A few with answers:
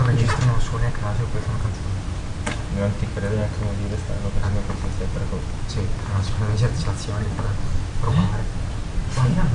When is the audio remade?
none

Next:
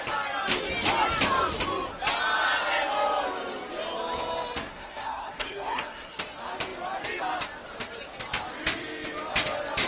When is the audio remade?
4.7-6.2 (codec, SNAC)

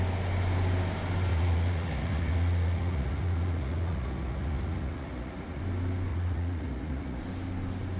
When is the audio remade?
1.3-5.6 (vocoder, Vocos); 6.1-7.2

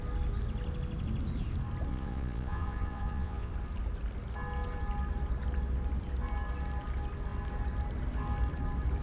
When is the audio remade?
1.9-3.5 (vocoder, Vocos)

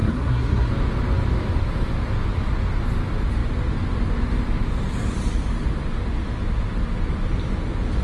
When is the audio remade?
0.0-0.7 (codec, SNAC)